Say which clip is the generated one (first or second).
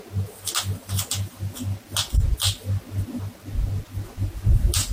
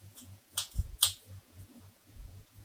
second